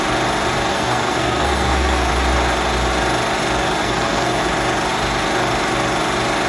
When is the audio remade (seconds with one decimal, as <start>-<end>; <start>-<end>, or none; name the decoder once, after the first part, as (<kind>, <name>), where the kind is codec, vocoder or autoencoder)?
0.7-2.1 (codec, SNAC); 3.8-4.4